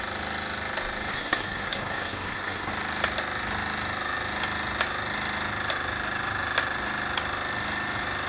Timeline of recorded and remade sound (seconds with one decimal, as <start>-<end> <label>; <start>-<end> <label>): 0.0-1.1 recorded; 1.1-2.7 remade; 2.7-8.3 recorded